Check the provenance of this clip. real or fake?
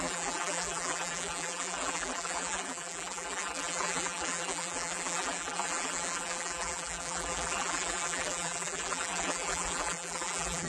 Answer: fake